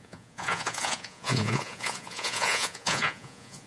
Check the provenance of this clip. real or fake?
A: fake